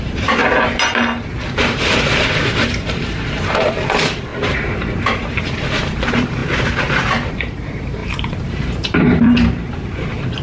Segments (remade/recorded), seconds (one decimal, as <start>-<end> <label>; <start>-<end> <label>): 0.0-0.4 remade; 0.4-1.6 recorded; 1.6-10.4 remade